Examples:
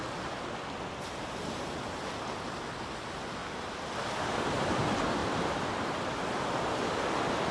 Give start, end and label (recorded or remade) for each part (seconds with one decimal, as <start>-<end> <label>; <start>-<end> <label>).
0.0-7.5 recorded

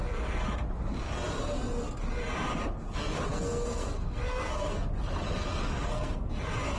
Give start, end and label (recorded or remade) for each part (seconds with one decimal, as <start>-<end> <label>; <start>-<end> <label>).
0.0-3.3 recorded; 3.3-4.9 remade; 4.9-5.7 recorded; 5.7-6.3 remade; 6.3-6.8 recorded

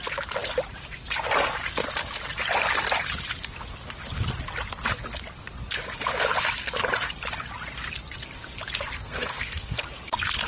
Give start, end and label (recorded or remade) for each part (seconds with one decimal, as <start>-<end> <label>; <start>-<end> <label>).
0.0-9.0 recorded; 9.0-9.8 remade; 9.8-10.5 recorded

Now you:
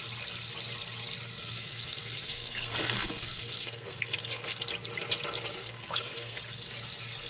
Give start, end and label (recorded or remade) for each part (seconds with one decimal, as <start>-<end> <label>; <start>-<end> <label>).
0.0-1.4 recorded; 1.4-4.7 remade; 4.7-5.5 recorded; 5.5-6.4 remade; 6.4-7.3 recorded